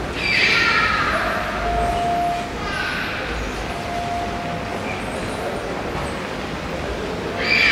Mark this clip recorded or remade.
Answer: recorded